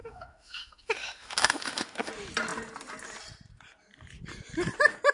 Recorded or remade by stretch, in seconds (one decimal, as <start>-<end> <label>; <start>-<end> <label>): 0.0-2.1 remade; 2.1-5.1 recorded

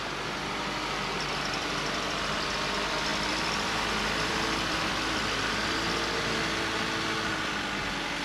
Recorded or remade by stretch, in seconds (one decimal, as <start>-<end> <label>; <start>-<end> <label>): 0.0-3.1 recorded; 3.1-5.5 remade; 5.5-8.2 recorded

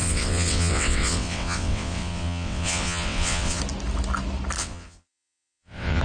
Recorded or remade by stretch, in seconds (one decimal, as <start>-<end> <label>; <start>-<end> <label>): 0.0-3.6 remade; 3.6-4.6 recorded; 4.6-6.0 remade